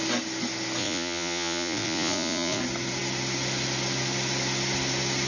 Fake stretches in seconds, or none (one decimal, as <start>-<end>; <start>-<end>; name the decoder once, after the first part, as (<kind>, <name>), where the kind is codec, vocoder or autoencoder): 0.8-2.6 (vocoder, Vocos)